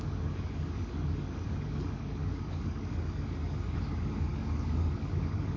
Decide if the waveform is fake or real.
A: fake